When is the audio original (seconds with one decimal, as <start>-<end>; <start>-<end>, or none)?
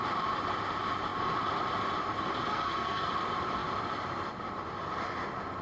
0.0-2.5; 3.1-5.6